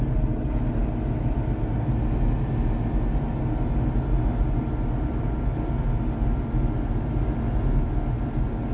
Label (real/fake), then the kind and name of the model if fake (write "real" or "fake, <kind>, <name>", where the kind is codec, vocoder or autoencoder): real